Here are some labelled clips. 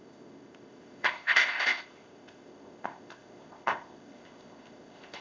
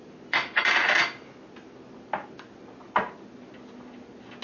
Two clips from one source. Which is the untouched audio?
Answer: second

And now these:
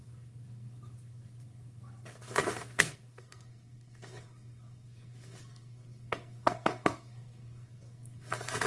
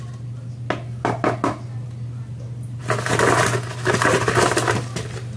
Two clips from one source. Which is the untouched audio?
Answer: second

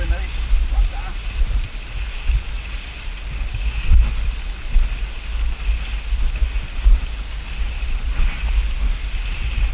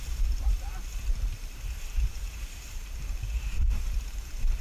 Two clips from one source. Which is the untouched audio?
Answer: first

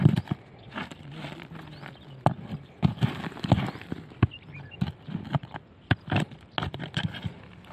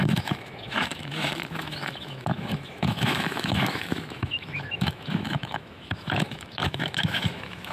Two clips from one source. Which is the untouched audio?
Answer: first